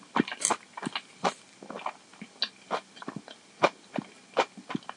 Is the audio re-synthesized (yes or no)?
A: no